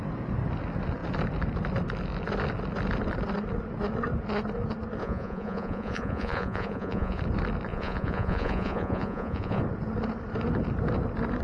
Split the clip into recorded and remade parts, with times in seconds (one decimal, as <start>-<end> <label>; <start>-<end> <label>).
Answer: 0.0-5.0 recorded; 5.0-7.2 remade; 7.2-7.7 recorded; 7.7-9.6 remade; 9.6-11.4 recorded